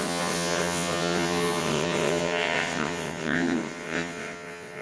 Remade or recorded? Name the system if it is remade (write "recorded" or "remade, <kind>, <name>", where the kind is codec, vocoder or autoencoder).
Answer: remade, vocoder, WaveNeXt